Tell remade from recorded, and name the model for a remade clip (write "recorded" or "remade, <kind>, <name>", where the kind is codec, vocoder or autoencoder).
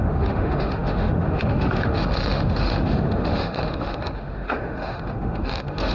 remade, autoencoder, DAC-VAE